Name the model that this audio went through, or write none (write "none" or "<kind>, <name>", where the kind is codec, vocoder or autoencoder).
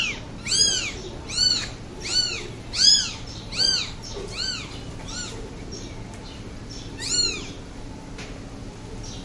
none